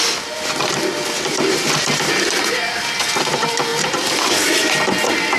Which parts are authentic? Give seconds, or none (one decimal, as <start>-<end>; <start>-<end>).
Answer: 0.0-5.4

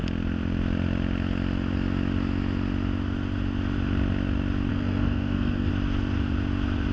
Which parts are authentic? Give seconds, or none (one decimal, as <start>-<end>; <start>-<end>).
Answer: 0.0-4.7; 5.7-6.9